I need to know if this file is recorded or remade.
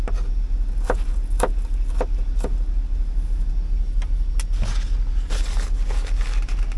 recorded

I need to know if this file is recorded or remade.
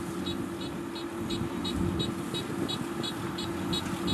recorded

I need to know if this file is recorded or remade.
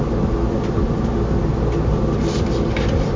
recorded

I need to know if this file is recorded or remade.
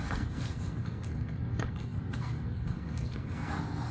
remade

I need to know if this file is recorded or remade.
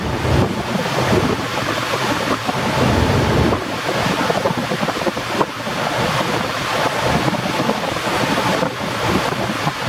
recorded